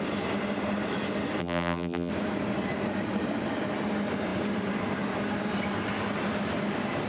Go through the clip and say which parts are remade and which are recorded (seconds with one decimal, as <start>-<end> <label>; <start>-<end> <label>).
0.0-1.4 recorded; 1.4-2.1 remade; 2.1-7.1 recorded